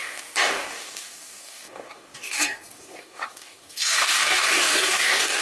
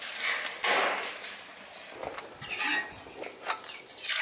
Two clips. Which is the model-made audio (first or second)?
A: first